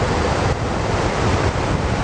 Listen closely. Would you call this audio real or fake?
real